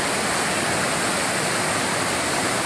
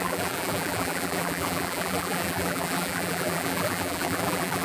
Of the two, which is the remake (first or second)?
second